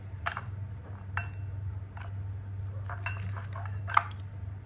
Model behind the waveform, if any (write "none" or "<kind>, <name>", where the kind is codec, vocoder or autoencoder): none